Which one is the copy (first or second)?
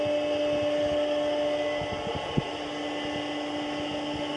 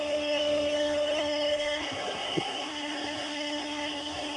second